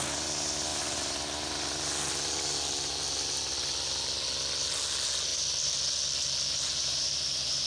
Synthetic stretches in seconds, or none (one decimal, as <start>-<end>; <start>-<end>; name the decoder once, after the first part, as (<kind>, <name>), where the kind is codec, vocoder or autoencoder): none